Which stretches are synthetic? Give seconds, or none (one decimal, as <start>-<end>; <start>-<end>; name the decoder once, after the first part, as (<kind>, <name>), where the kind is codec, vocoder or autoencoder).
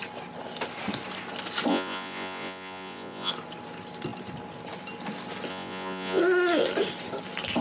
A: 1.7-3.3 (vocoder, Vocos); 5.5-6.2